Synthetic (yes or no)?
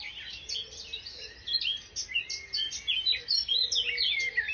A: no